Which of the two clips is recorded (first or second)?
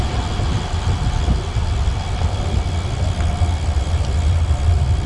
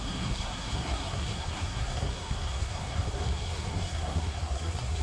first